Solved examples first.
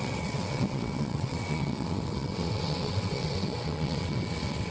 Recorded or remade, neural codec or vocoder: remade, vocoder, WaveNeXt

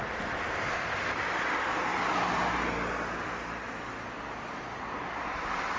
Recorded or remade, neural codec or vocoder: recorded